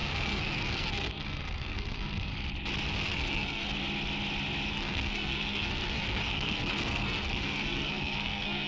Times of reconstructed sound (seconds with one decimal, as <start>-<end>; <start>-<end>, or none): 0.0-2.3; 3.0-3.8; 4.7-8.7